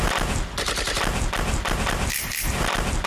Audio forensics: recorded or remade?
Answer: remade